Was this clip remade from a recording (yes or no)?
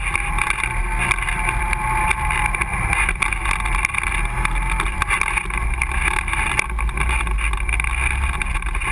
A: no